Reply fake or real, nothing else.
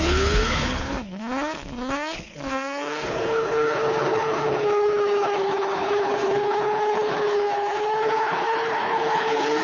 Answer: fake